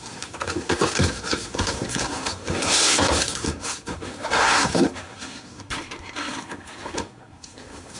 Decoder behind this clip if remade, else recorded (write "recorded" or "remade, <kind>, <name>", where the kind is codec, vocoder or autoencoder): remade, codec, SNAC